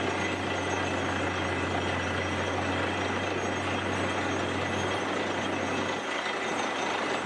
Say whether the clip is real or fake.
real